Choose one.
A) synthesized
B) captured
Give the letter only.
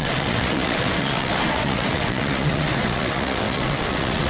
A